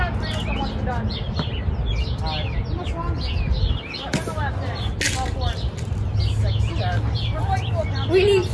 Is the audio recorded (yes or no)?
yes